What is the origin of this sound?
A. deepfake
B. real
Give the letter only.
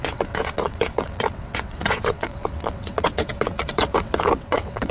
A